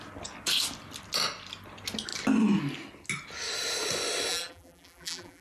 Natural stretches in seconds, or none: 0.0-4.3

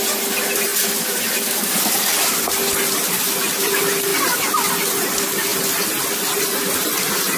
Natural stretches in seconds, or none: 0.0-7.4

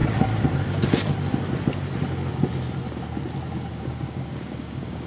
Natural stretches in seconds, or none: 0.0-3.7

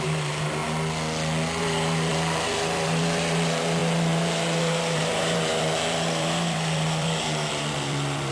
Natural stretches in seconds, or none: 0.6-1.6

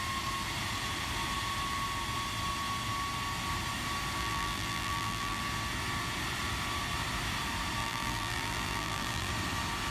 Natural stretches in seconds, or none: 0.0-4.2; 5.4-7.8; 9.3-9.9

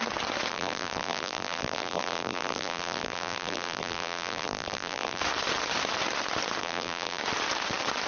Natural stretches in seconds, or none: 0.0-0.5; 5.2-6.6; 7.2-8.1

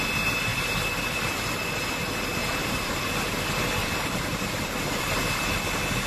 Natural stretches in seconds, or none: 0.0-2.4; 3.1-3.8; 5.0-6.1

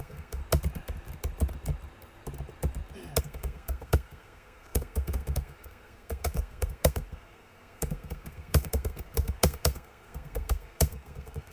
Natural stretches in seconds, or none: 0.4-3.2